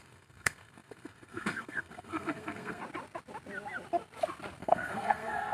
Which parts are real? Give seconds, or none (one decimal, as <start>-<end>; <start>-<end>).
2.8-4.6